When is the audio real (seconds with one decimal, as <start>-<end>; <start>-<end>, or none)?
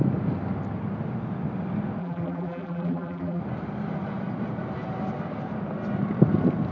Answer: 0.0-2.0; 3.4-6.7